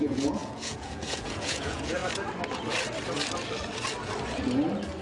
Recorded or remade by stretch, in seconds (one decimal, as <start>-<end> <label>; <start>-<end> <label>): 0.0-2.0 remade; 2.0-5.0 recorded